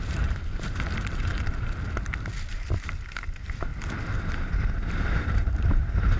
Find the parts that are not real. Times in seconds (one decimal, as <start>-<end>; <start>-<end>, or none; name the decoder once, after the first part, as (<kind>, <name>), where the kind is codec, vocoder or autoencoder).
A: 0.0-1.3 (vocoder, BigVGAN v2); 2.5-3.7; 4.6-6.2